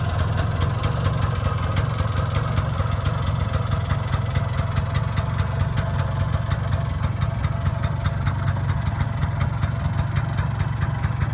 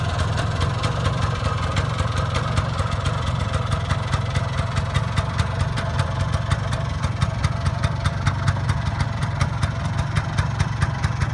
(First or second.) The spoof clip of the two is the second